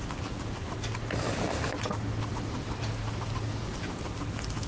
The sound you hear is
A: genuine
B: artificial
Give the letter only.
A